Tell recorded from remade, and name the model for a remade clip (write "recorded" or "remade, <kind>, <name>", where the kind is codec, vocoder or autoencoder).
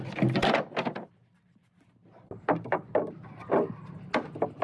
recorded